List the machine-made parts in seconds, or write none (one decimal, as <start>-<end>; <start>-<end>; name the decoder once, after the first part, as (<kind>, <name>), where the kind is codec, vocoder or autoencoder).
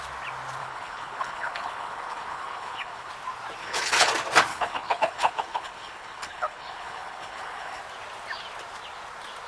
0.6-3.1 (codec, HILCodec); 3.6-4.1; 4.5-7.8